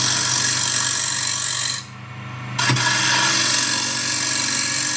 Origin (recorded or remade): recorded